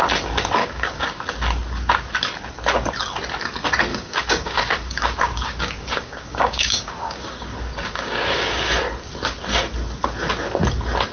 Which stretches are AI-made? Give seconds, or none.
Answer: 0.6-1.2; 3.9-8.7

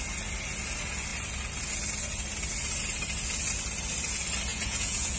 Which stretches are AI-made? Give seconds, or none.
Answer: 4.5-5.2

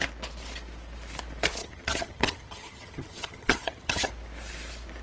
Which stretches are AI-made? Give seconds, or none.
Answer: 1.6-4.1